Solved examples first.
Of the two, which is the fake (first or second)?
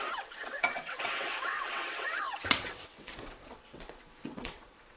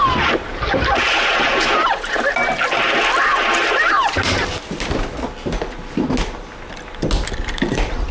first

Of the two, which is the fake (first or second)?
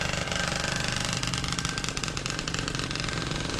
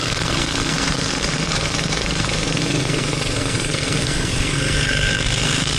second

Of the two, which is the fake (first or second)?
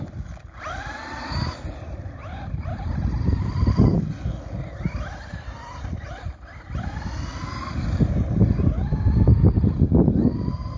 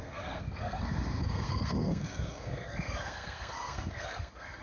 second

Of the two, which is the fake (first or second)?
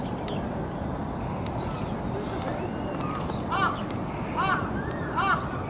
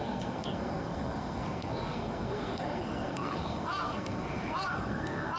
second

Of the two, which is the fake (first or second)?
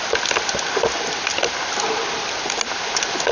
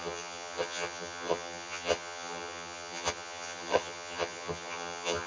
second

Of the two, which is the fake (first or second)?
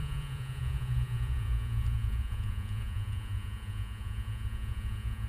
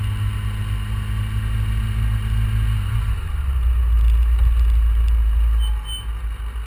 first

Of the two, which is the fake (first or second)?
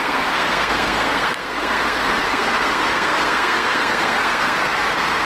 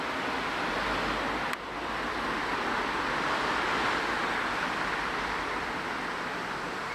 first